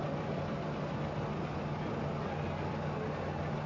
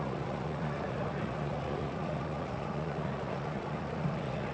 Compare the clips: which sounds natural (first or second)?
first